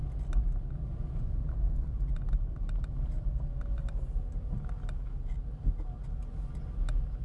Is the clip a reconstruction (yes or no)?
no